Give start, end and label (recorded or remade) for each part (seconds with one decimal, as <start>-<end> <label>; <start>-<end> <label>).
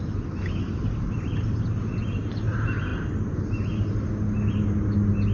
0.0-5.3 recorded